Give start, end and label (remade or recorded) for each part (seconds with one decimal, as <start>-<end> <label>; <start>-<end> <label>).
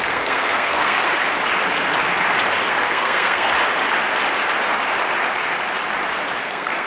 0.0-1.1 remade; 1.1-2.7 recorded; 2.7-3.5 remade; 3.5-6.4 recorded; 6.4-6.9 remade